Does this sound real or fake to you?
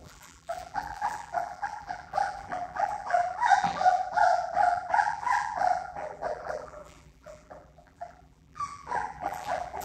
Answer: fake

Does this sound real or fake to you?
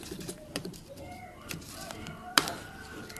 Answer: fake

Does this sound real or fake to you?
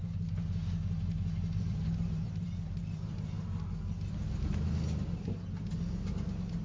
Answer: real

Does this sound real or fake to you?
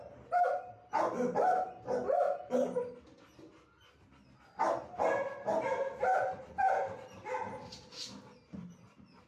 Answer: real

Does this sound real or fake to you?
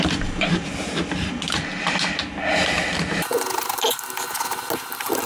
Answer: real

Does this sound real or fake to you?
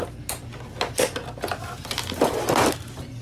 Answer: real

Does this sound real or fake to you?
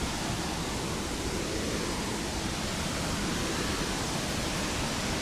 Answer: real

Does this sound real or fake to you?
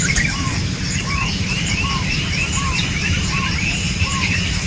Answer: fake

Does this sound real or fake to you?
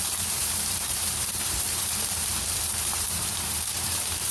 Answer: fake